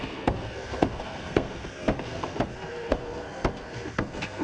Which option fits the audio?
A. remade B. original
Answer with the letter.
A